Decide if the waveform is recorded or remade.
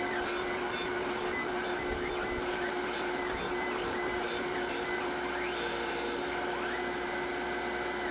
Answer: recorded